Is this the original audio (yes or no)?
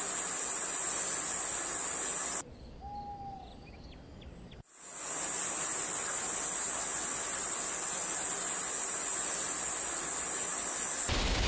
yes